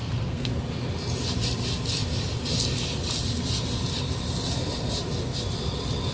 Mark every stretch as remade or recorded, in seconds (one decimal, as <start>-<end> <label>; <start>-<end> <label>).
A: 0.0-0.5 remade; 0.5-6.1 recorded